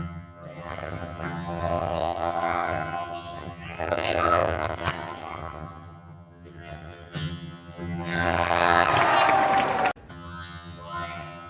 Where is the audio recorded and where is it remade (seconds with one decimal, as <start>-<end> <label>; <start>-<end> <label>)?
0.0-8.9 remade; 8.9-10.1 recorded; 10.1-11.5 remade